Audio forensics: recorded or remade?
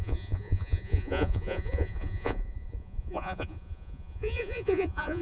remade